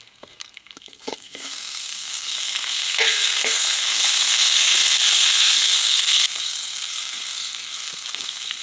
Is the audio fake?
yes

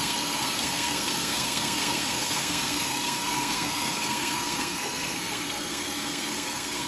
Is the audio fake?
yes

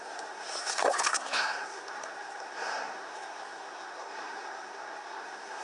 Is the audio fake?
yes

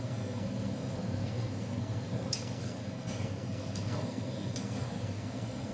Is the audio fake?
yes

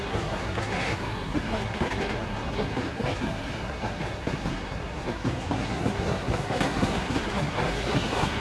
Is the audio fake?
yes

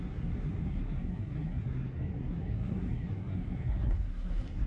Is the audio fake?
yes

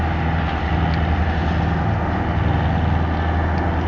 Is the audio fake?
no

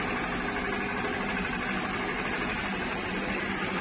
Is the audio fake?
no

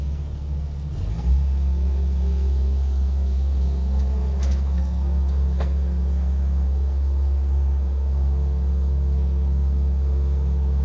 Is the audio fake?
yes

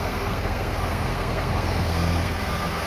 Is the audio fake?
yes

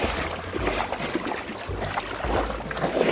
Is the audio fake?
no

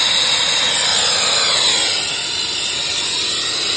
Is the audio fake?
no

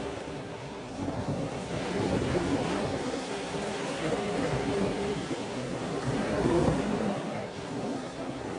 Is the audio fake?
yes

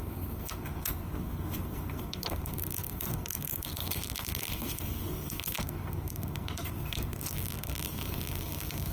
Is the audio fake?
yes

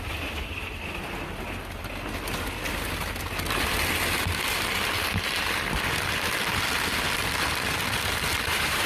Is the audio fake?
no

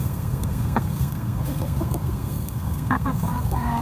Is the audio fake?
yes